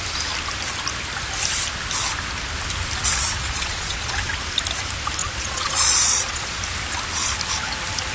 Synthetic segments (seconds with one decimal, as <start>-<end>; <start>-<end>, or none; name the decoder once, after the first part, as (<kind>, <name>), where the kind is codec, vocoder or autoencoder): 3.4-4.2 (vocoder, Vocos); 5.2-6.6